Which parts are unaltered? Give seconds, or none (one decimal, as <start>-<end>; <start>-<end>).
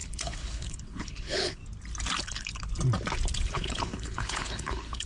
1.6-2.2; 2.7-3.4